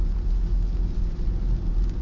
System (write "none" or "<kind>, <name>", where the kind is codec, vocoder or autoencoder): none